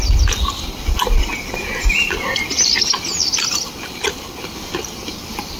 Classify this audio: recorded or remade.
recorded